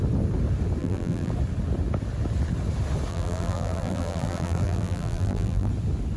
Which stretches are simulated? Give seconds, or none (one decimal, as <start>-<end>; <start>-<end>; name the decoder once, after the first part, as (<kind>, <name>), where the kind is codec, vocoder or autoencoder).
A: 0.8-1.3 (vocoder, BigVGAN v2); 3.1-5.7